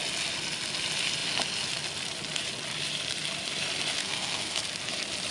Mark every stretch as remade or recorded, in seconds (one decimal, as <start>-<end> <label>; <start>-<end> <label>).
0.0-4.0 recorded; 4.0-4.6 remade; 4.6-5.3 recorded